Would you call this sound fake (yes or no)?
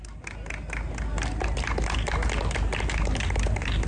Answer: no